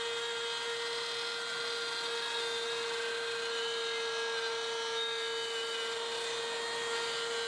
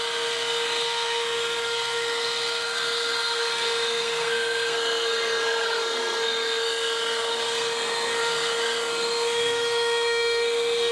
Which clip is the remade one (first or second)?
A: second